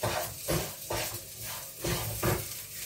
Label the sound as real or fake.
real